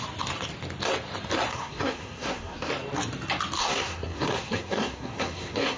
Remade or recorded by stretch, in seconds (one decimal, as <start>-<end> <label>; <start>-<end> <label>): 0.0-1.5 recorded; 1.5-2.7 remade; 2.7-3.6 recorded; 3.6-5.8 remade